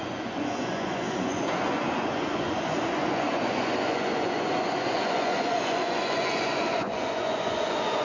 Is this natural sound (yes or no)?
no